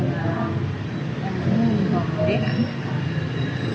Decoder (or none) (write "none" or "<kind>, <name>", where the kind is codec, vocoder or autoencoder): none